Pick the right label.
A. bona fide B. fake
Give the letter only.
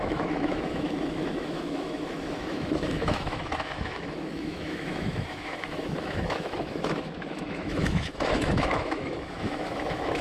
B